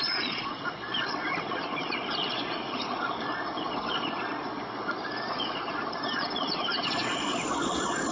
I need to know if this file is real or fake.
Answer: fake